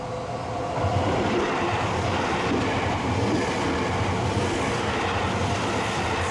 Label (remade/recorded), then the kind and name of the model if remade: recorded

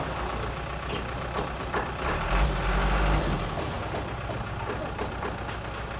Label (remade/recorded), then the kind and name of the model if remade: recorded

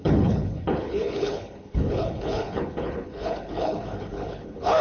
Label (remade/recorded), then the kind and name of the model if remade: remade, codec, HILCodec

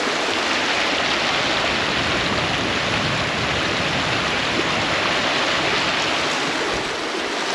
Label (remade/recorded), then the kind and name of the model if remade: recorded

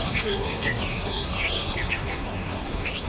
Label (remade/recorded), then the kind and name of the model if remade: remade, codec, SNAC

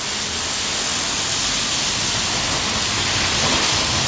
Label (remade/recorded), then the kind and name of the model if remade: recorded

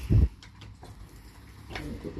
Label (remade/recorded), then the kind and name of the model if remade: recorded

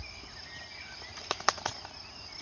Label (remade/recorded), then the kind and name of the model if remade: recorded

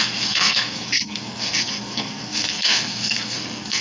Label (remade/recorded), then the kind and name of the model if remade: remade, codec, SNAC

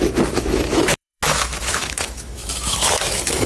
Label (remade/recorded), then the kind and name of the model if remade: remade, autoencoder, DAC-VAE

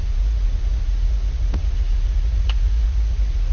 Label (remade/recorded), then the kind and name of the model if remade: remade, vocoder, Vocos